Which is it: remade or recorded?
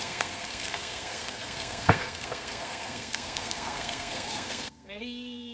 remade